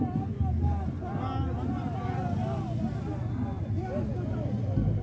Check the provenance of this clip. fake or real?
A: real